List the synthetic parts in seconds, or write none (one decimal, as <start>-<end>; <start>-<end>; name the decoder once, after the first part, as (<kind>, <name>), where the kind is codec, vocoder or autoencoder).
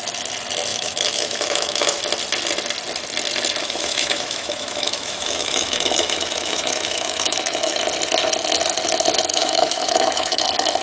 0.7-2.0 (autoencoder, DAC-VAE); 3.6-7.8; 9.3-10.4